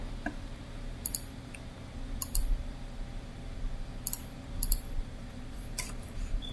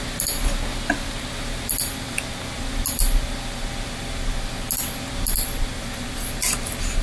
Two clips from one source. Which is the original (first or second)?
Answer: second